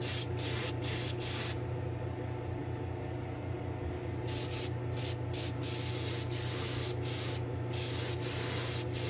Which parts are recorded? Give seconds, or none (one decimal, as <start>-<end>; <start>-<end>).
0.0-9.1

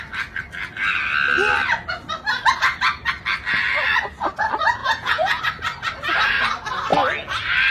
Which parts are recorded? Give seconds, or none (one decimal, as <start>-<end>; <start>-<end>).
0.0-4.8; 5.4-7.7

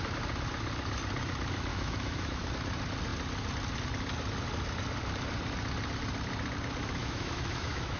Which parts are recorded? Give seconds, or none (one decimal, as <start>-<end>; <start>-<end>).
0.0-1.7; 2.5-7.0